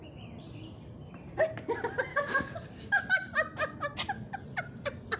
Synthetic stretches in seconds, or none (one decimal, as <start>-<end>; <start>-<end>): 2.1-3.0